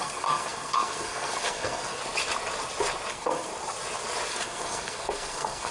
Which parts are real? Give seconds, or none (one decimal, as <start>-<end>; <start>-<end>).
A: 2.0-3.1; 3.5-4.3